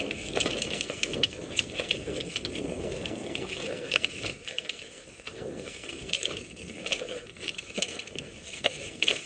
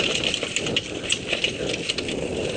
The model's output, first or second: first